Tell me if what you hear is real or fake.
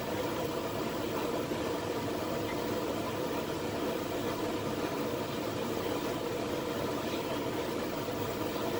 real